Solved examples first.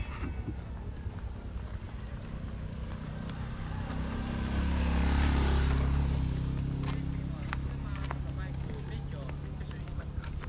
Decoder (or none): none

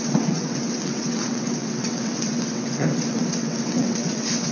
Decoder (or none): vocoder, WaveNeXt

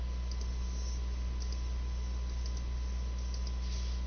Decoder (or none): none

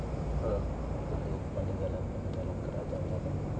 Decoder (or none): none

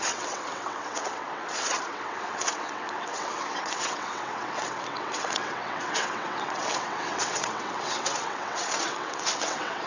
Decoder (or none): vocoder, WaveNeXt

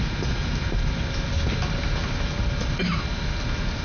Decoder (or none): none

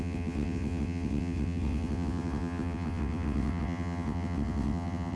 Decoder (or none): vocoder, WaveNeXt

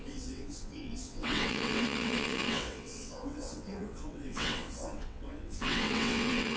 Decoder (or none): vocoder, WaveNeXt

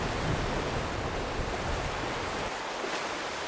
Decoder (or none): none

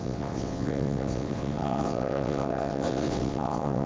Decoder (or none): vocoder, WaveNeXt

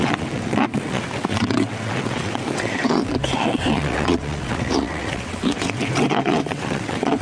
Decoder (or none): vocoder, WaveNeXt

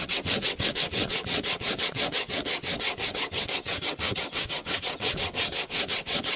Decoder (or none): vocoder, WaveNeXt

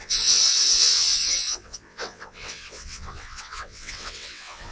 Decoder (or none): vocoder, WaveNeXt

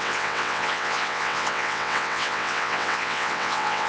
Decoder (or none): vocoder, WaveNeXt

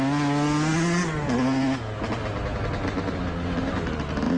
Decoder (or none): none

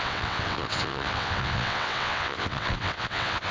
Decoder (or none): vocoder, WaveNeXt